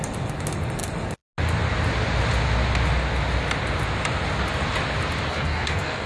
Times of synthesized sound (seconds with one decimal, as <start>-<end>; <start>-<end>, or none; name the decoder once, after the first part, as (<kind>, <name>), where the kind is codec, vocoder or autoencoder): 5.3-6.1 (codec, DAC)

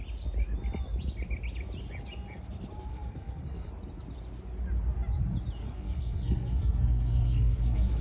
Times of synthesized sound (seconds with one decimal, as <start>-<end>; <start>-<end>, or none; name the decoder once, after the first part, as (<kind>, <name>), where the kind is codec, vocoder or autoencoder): 2.9-3.7 (codec, SNAC); 5.6-8.0

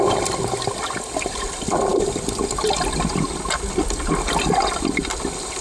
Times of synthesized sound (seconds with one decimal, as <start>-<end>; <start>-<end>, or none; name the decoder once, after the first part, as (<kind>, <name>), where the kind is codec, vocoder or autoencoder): none